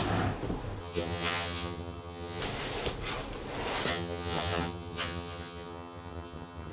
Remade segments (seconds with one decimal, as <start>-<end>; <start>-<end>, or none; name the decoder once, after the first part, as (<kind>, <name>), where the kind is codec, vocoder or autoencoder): 0.8-2.4 (vocoder, HiFi-GAN); 3.9-6.7